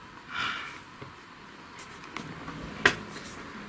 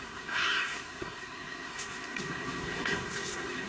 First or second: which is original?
first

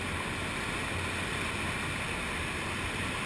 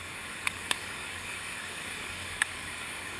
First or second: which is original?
first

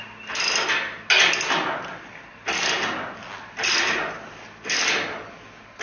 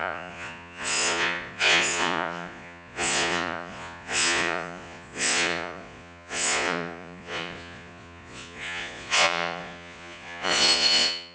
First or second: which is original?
first